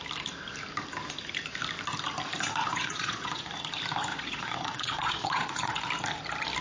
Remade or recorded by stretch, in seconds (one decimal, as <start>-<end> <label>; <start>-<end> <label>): 0.0-2.7 recorded; 2.7-3.5 remade; 3.5-4.1 recorded; 4.1-5.7 remade; 5.7-6.6 recorded